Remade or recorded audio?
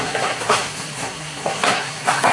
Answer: remade